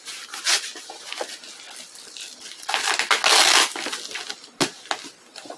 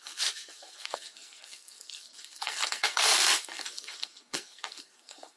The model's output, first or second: second